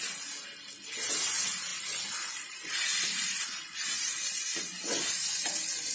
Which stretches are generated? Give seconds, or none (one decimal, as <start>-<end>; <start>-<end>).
none